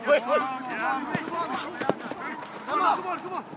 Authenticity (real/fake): real